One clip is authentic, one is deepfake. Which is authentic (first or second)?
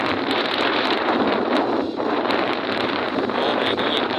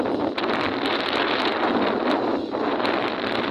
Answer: second